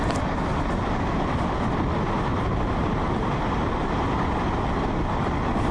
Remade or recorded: recorded